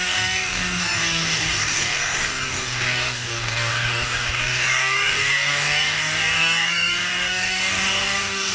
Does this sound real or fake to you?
fake